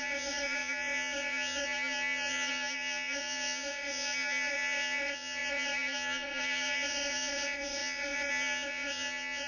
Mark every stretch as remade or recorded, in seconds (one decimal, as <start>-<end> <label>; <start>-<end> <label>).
0.0-9.5 remade